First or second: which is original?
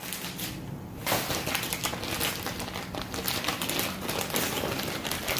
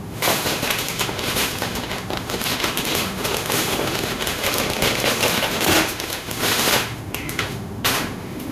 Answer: first